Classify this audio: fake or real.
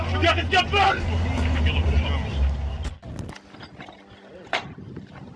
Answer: real